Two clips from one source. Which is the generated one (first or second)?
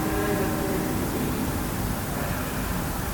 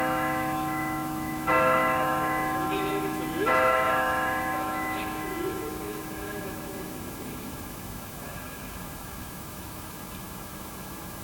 second